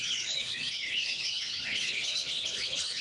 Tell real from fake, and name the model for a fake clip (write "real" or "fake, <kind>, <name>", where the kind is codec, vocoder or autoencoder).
fake, codec, HILCodec